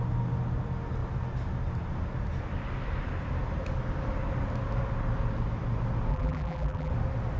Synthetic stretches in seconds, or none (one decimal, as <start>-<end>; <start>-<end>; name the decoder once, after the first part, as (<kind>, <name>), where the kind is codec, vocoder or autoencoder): 6.1-6.9 (vocoder, BigVGAN v2)